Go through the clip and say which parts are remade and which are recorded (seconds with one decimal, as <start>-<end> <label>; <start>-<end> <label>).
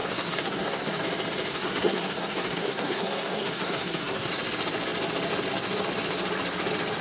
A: 0.0-1.0 remade; 1.0-1.5 recorded; 1.5-4.3 remade; 4.3-7.0 recorded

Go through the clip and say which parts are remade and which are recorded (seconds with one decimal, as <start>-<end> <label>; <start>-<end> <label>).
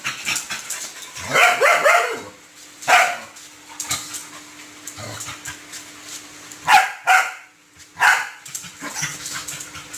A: 0.0-10.0 recorded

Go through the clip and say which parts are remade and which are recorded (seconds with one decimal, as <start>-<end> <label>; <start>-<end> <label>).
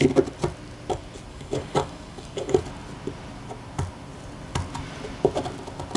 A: 0.0-1.3 recorded; 1.3-2.6 remade; 2.6-6.0 recorded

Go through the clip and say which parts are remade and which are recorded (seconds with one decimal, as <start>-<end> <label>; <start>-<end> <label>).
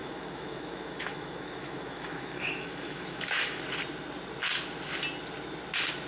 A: 0.0-3.6 remade; 3.6-6.1 recorded